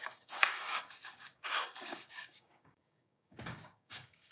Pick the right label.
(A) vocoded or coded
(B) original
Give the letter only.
A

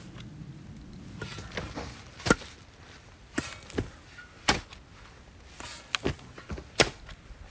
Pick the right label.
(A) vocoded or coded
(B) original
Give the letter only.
B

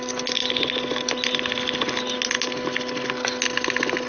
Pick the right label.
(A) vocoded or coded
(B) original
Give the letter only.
B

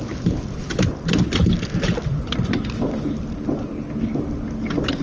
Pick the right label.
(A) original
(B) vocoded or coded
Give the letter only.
A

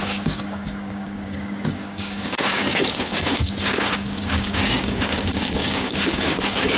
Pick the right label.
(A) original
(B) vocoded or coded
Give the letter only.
B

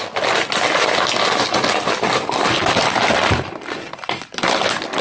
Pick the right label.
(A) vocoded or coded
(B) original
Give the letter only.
B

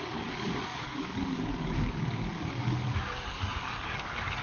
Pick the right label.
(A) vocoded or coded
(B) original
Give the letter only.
A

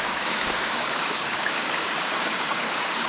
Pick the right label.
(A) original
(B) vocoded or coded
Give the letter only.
B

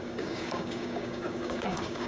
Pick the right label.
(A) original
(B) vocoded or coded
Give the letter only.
B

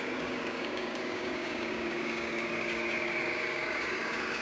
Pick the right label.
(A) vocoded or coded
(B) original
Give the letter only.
A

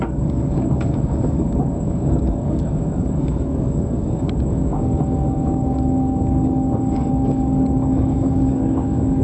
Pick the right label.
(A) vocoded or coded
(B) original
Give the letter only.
A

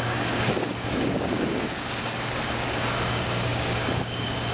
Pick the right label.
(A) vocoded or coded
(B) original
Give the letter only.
A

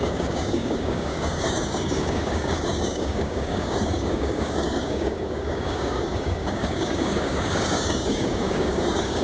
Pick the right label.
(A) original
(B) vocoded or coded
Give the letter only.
B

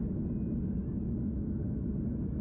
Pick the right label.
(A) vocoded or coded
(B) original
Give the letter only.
B